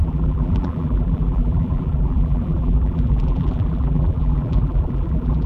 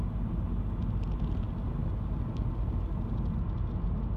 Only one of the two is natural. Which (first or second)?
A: second